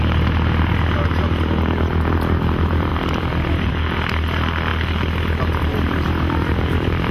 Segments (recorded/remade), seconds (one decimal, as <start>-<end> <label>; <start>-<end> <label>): 0.0-2.9 recorded; 2.9-3.7 remade; 3.7-4.7 recorded; 4.7-7.1 remade